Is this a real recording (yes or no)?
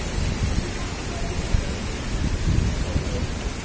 yes